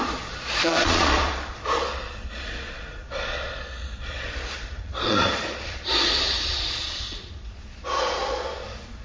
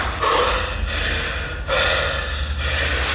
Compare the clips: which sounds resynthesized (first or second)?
first